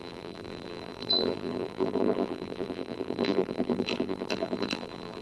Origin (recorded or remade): remade